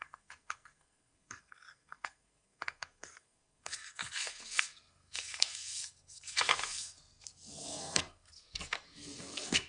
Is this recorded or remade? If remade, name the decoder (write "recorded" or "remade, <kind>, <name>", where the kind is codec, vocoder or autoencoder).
remade, codec, SNAC